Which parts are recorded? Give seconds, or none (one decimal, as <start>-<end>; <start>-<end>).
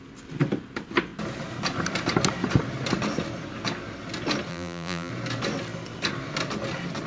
0.0-4.5; 5.1-7.1